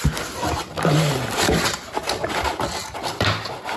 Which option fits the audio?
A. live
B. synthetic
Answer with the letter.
A